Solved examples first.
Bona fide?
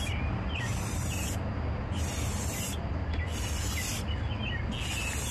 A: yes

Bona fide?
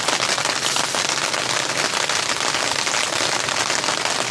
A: yes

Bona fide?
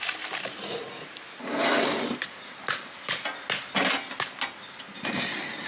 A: yes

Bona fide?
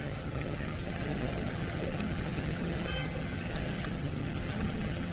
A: no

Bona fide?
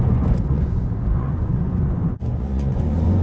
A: no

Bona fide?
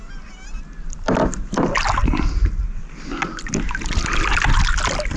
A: yes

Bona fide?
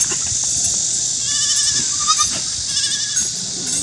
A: yes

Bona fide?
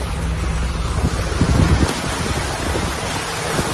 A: yes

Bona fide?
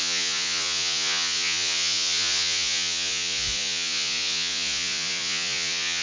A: no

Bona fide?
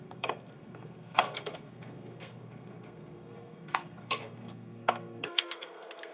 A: no